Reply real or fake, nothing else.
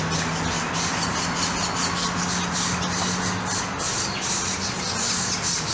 real